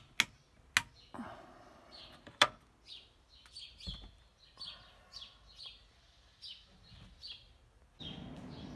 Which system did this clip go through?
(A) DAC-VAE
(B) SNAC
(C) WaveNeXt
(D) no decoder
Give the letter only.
D